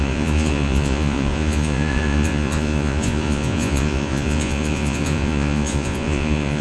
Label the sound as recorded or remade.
remade